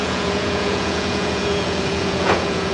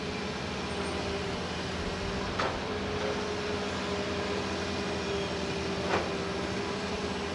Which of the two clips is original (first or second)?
second